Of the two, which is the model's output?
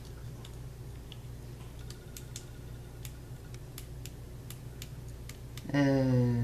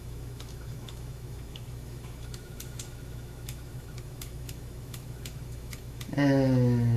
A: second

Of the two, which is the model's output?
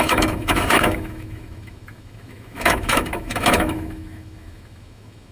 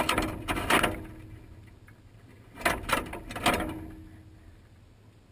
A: first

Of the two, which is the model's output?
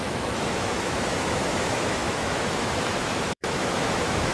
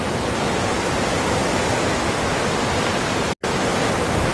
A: first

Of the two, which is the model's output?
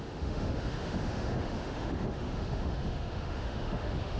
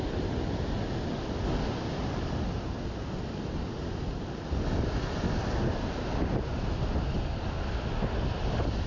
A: first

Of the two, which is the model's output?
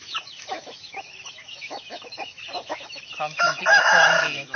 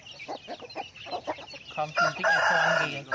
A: first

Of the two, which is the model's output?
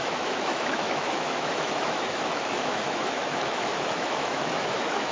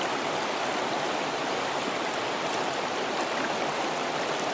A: first